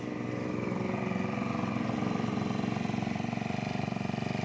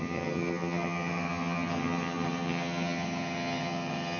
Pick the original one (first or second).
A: first